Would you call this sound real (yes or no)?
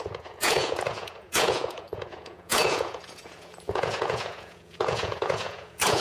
no